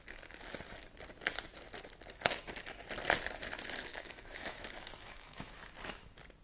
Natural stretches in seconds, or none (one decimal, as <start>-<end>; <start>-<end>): 0.0-3.9; 5.7-6.4